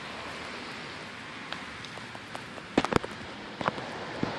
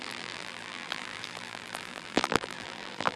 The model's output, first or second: second